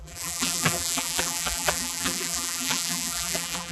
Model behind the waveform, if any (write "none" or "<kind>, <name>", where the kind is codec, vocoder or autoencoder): vocoder, BigVGAN v2